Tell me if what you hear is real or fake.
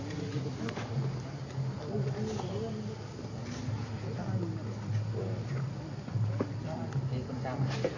real